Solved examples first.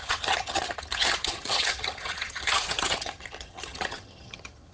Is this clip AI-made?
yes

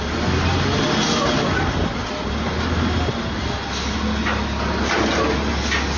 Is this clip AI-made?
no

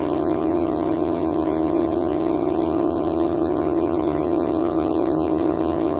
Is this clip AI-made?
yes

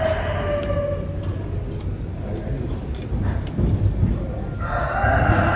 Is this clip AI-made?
no